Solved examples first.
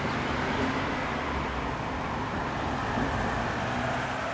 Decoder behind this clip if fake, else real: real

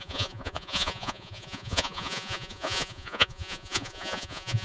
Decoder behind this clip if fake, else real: fake, vocoder, Vocos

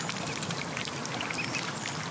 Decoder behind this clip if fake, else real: real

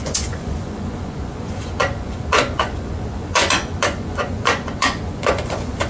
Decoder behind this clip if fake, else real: fake, vocoder, Vocos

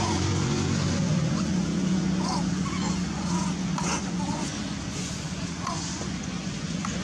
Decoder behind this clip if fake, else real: fake, vocoder, Vocos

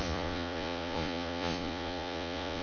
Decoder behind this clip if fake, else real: fake, vocoder, Vocos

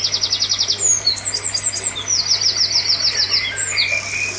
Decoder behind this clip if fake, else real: real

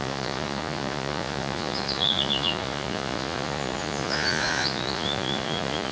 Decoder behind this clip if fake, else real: fake, vocoder, Vocos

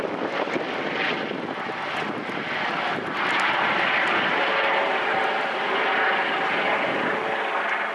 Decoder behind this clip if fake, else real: real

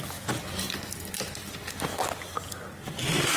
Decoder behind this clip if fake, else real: real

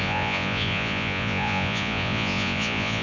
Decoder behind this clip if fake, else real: fake, vocoder, Vocos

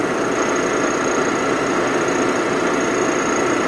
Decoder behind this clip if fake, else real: real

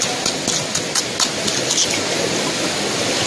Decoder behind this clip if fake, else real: real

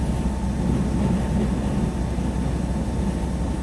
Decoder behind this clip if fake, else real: real